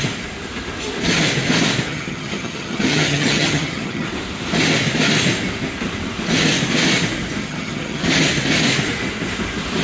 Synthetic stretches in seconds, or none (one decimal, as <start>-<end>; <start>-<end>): 1.9-4.1; 7.4-8.0